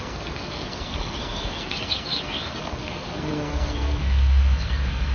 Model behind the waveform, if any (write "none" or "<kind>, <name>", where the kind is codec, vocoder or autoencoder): codec, SNAC